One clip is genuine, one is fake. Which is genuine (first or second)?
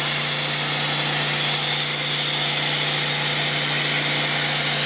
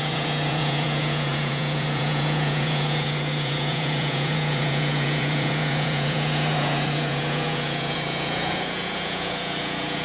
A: first